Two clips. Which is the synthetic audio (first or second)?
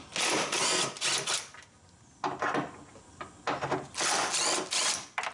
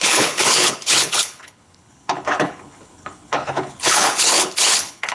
second